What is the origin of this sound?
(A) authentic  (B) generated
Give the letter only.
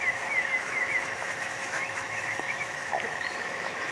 B